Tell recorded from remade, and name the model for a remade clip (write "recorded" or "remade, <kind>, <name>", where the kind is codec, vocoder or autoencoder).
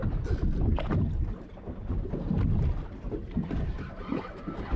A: recorded